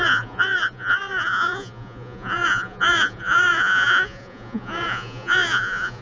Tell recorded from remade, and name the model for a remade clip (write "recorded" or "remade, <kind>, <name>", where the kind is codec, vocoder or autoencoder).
remade, vocoder, Vocos